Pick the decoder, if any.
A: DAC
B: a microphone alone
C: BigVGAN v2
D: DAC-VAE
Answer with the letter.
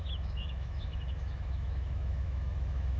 D